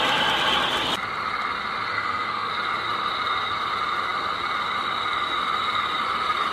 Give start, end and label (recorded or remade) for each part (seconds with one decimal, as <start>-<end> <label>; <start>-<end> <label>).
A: 0.0-1.9 recorded; 1.9-2.5 remade; 2.5-6.5 recorded